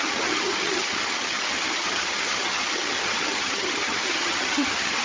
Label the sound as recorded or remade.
remade